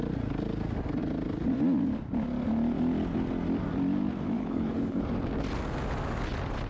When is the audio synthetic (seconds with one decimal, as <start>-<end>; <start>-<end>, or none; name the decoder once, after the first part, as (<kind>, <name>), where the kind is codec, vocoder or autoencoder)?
4.4-5.0 (codec, HILCodec)